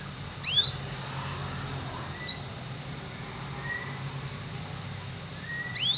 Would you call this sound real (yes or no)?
yes